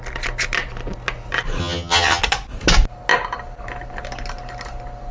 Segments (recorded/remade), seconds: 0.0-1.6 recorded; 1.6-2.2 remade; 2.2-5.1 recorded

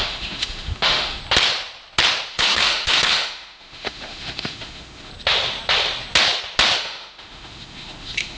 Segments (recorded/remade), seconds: 0.0-1.2 remade; 1.2-2.3 recorded; 2.3-5.1 remade; 5.1-6.8 recorded; 6.8-8.4 remade